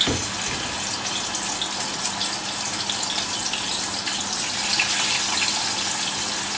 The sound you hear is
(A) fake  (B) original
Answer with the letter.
B